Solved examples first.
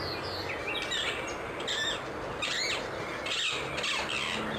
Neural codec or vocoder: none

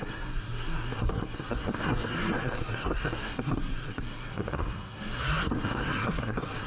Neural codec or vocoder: codec, SNAC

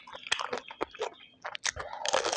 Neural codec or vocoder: none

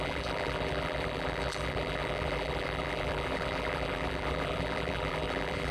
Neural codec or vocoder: vocoder, BigVGAN v2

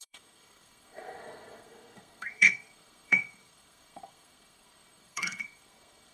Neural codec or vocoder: codec, SNAC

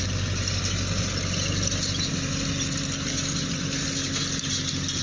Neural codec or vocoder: none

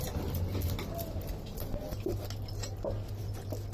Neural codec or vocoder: none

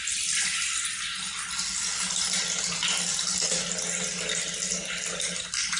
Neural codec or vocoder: none